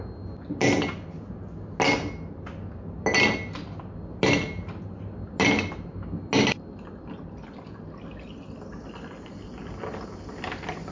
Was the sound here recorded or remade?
recorded